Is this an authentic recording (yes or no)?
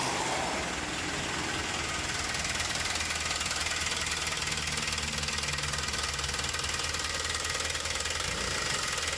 yes